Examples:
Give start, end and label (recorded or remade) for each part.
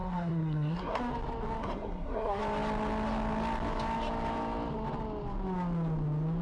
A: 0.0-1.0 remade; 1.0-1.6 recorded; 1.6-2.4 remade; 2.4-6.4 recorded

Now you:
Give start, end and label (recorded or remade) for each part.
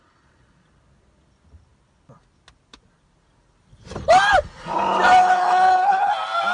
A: 0.0-5.2 recorded; 5.2-6.1 remade; 6.1-6.5 recorded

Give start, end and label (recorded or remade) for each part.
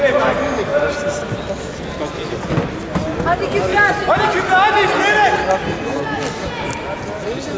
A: 0.0-7.6 recorded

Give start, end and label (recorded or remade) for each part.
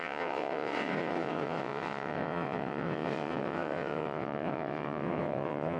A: 0.0-5.8 remade